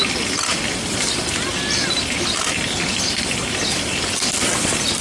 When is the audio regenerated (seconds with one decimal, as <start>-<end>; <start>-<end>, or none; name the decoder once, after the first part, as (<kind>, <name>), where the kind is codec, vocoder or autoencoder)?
3.0-5.0 (vocoder, BigVGAN v2)